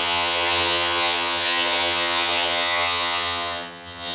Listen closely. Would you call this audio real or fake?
fake